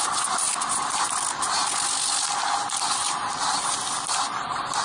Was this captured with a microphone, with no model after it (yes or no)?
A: yes